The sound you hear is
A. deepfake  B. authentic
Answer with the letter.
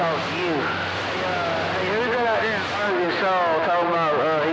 B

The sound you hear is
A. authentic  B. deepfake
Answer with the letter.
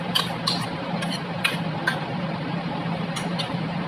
B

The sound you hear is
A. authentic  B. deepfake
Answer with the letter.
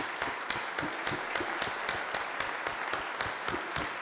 A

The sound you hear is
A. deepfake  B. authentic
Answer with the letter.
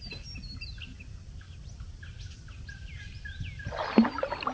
B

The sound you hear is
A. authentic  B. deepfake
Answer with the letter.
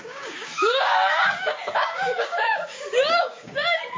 B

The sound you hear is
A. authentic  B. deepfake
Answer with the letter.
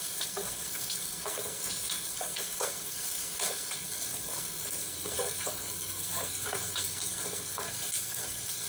B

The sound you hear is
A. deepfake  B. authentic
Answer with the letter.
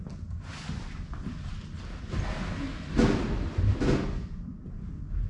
B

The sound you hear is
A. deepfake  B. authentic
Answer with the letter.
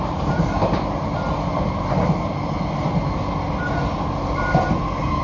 B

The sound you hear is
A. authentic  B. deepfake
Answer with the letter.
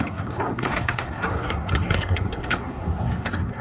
B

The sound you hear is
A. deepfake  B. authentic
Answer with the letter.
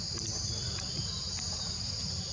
B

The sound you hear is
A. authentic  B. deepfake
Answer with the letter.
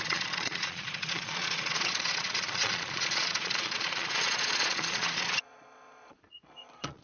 B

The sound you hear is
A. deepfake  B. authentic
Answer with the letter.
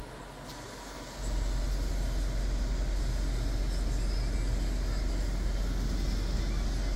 B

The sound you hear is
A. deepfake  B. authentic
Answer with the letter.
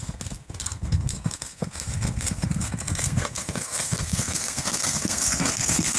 A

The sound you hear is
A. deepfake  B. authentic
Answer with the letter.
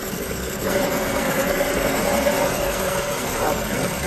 A